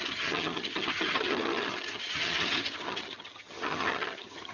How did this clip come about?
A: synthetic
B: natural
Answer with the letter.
A